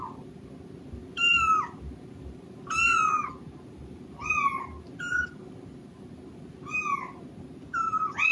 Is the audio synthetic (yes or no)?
no